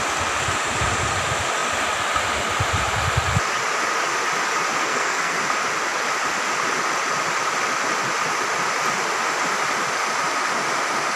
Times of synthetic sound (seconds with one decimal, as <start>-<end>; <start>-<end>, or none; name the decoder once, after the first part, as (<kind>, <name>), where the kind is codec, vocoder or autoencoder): 4.8-5.4 (codec, SNAC)